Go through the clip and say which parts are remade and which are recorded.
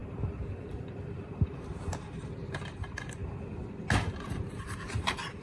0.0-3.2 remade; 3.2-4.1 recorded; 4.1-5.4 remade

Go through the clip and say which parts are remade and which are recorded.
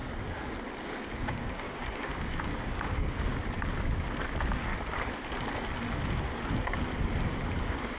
0.0-1.3 recorded; 1.3-3.3 remade; 3.3-4.3 recorded; 4.3-4.7 remade; 4.7-7.6 recorded; 7.6-8.0 remade